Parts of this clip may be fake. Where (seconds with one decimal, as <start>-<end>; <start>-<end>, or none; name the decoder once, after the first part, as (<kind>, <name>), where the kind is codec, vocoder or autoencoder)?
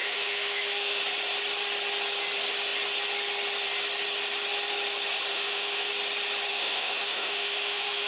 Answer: 0.0-1.0 (autoencoder, DAC-VAE); 5.3-5.9; 6.5-8.1